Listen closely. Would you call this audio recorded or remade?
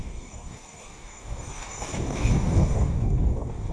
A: remade